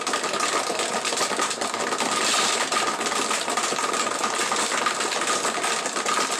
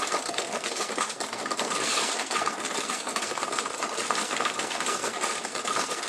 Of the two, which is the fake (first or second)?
second